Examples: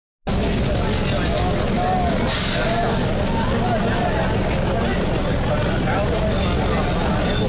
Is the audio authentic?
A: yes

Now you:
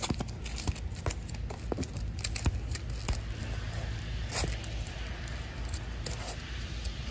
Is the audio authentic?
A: yes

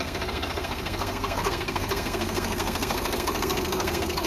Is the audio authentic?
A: no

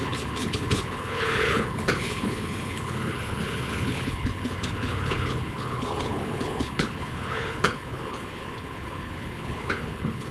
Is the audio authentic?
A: no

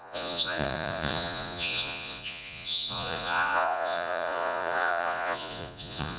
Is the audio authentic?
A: no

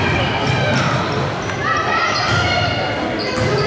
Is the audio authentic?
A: yes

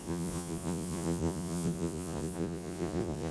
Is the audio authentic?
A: no